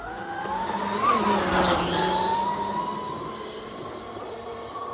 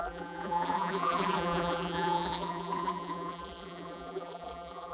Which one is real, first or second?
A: first